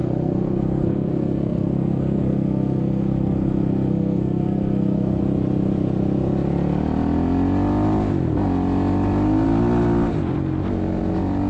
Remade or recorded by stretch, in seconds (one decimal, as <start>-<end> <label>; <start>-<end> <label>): 0.0-5.2 remade; 5.2-11.5 recorded